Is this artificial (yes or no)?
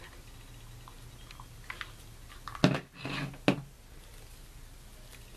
no